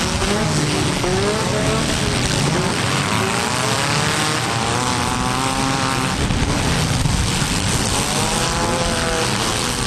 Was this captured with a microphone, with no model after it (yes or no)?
yes